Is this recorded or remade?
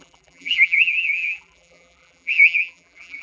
remade